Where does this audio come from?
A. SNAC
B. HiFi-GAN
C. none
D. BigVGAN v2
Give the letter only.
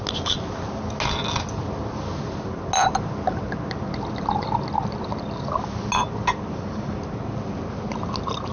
C